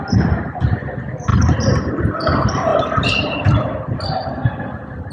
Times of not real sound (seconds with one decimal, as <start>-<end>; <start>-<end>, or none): none